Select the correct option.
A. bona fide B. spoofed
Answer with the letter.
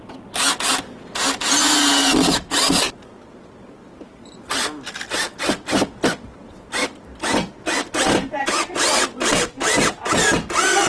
A